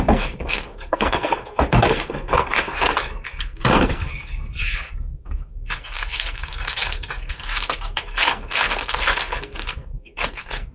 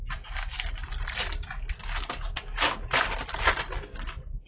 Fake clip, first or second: first